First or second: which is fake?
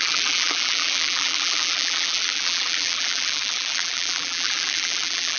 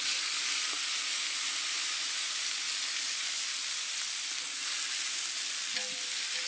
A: first